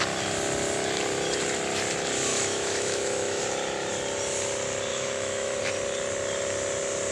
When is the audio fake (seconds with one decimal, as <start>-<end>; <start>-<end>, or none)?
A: 2.3-3.4; 4.9-5.6